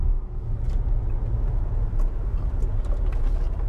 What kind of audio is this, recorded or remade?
recorded